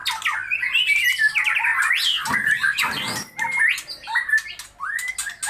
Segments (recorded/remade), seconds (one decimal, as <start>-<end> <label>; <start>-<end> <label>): 0.0-5.5 recorded